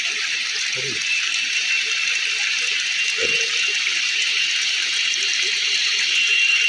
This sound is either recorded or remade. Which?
remade